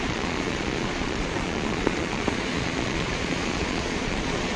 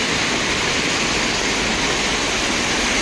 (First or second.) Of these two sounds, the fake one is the first